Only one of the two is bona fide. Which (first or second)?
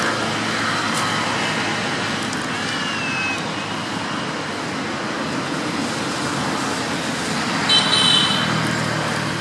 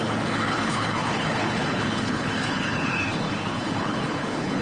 first